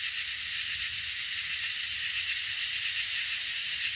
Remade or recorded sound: recorded